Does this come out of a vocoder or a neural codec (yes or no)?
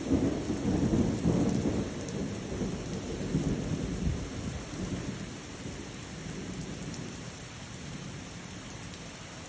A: no